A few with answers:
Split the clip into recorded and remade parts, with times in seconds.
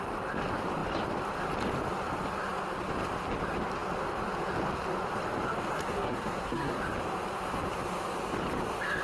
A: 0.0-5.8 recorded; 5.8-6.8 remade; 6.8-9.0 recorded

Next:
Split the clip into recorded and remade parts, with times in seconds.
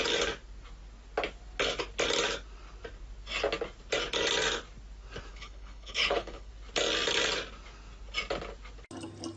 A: 0.0-5.3 recorded; 5.3-6.5 remade; 6.5-9.4 recorded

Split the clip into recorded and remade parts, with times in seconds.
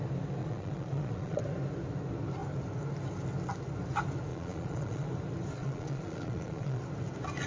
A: 0.0-0.4 recorded; 0.4-1.4 remade; 1.4-4.3 recorded; 4.3-5.1 remade; 5.1-5.6 recorded; 5.6-6.8 remade; 6.8-7.5 recorded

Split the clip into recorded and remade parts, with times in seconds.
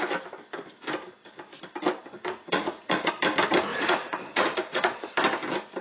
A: 0.0-2.2 recorded; 2.2-3.1 remade; 3.1-3.7 recorded; 3.7-5.1 remade; 5.1-5.8 recorded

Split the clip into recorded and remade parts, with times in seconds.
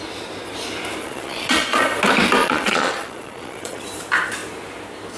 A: 0.0-1.0 recorded; 1.0-1.8 remade; 1.8-2.4 recorded; 2.4-3.8 remade; 3.8-5.2 recorded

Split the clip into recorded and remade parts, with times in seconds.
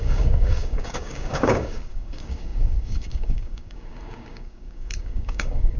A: 0.0-5.8 remade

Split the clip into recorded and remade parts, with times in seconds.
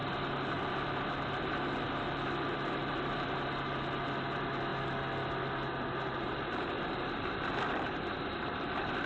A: 0.0-9.1 recorded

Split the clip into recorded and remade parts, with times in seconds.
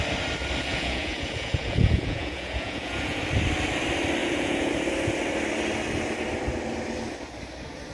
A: 0.0-0.7 recorded; 0.7-3.2 remade; 3.2-4.2 recorded; 4.2-4.7 remade; 4.7-7.9 recorded